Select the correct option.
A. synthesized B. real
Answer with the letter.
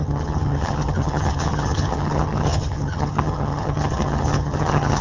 A